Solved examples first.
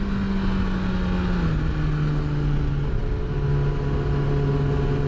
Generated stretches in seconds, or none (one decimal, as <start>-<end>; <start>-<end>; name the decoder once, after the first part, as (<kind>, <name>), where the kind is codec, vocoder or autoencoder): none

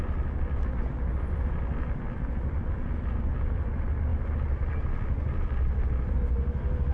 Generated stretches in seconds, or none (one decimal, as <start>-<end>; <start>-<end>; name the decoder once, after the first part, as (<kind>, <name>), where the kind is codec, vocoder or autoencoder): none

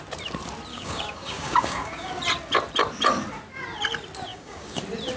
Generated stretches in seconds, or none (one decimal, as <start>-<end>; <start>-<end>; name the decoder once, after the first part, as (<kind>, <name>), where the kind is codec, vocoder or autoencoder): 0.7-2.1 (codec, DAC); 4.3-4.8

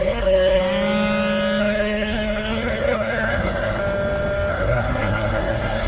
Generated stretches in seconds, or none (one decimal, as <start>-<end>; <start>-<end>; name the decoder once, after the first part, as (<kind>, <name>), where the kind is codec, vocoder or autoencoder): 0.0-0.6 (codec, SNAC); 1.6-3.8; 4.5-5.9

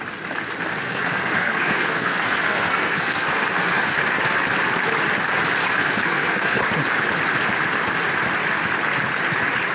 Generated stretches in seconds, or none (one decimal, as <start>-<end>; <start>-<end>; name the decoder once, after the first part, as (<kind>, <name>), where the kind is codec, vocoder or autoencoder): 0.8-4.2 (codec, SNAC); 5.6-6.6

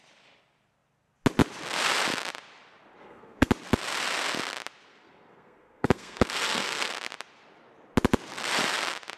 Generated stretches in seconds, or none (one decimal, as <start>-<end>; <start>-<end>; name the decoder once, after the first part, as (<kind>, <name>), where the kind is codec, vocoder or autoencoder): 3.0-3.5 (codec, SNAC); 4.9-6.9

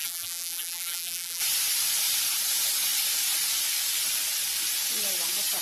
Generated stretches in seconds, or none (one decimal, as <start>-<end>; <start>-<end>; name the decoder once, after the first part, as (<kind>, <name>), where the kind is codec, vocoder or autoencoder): 0.0-1.4 (vocoder, BigVGAN v2)